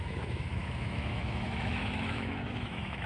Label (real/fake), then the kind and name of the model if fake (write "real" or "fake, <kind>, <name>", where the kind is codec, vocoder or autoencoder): fake, autoencoder, DAC-VAE